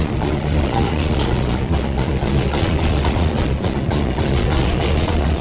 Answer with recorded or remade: remade